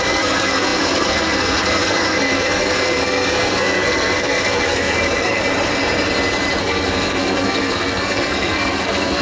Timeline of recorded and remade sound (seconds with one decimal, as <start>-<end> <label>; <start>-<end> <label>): 0.0-5.4 remade; 5.4-6.6 recorded; 6.6-9.2 remade